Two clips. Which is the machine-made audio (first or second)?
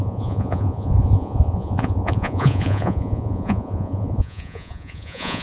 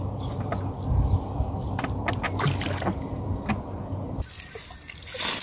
first